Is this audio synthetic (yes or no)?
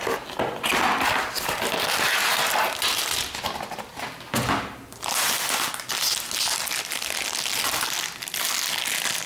no